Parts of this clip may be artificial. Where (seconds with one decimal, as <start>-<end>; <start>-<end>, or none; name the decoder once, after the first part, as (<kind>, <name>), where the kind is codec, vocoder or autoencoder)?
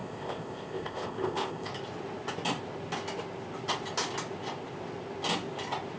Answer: 0.0-1.7 (codec, ZipCodec)